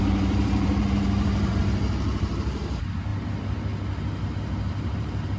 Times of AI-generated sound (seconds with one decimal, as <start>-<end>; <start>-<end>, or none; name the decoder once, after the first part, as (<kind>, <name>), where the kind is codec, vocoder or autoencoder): 0.0-1.6 (vocoder, BigVGAN v2); 2.2-3.1; 4.3-5.4